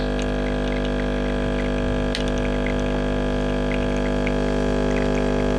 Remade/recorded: recorded